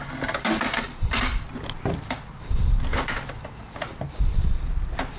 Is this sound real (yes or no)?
yes